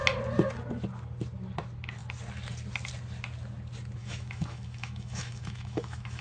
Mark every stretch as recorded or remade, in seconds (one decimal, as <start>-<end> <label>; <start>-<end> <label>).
0.0-4.0 recorded; 4.0-6.2 remade